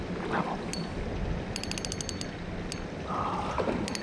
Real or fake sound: real